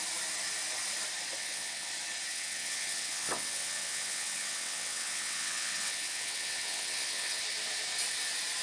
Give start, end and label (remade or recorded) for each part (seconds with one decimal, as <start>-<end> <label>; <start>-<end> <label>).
0.0-1.4 recorded; 1.4-1.9 remade; 1.9-2.3 recorded; 2.3-7.4 remade; 7.4-8.6 recorded